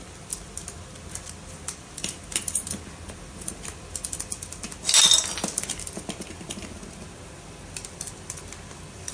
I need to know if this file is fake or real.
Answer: real